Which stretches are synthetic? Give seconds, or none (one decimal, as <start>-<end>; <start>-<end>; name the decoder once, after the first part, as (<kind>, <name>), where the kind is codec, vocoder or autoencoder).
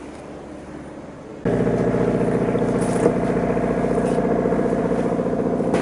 none